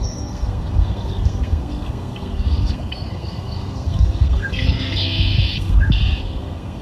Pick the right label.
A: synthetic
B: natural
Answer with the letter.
A